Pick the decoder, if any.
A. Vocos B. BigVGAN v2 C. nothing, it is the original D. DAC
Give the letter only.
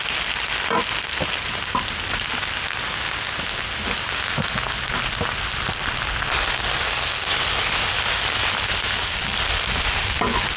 C